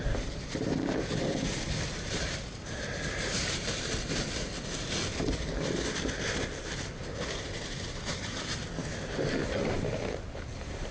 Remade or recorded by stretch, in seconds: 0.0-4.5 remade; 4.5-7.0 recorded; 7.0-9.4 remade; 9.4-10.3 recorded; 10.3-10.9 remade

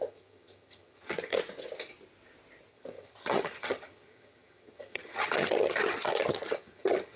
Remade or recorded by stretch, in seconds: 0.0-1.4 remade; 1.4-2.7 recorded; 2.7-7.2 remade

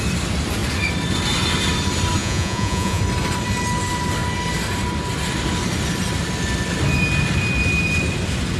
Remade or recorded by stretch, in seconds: 0.0-2.2 recorded; 2.2-3.0 remade; 3.0-8.6 recorded